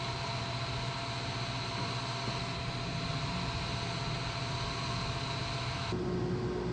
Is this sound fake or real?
real